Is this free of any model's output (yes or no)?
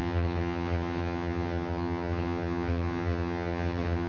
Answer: no